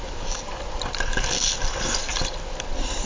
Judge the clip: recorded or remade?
recorded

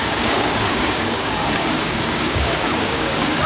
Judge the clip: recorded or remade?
remade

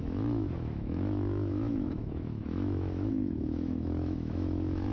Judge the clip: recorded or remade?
remade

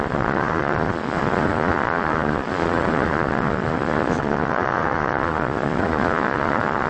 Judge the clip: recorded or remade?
remade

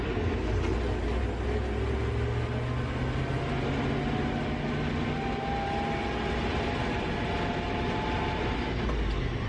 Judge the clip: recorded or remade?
recorded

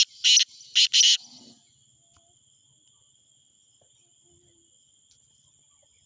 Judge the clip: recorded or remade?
recorded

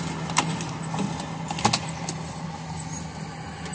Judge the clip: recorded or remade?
recorded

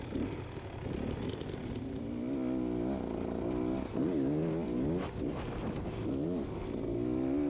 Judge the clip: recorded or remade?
recorded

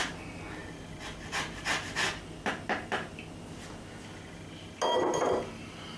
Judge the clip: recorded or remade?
recorded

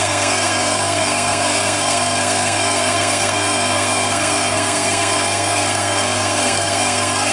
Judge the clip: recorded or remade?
remade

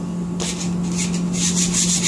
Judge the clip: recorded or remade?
recorded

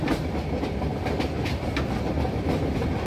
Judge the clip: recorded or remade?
recorded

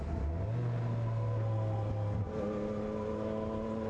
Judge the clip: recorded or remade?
recorded